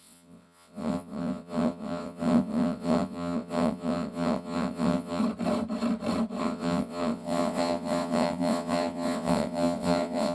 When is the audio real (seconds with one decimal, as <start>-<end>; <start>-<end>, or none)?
5.2-6.4

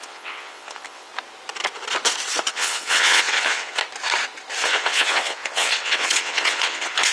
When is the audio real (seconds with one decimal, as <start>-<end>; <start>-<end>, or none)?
1.1-2.5; 3.8-4.6

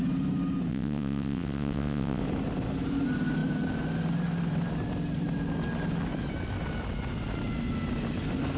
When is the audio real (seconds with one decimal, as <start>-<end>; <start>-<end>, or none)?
0.0-0.7; 2.2-8.6

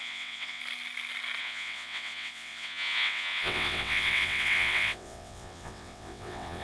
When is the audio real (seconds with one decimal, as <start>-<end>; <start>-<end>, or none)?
0.6-1.4

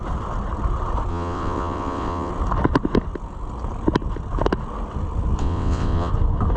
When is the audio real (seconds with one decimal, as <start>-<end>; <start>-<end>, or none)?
0.0-1.1; 2.3-5.4; 6.1-6.6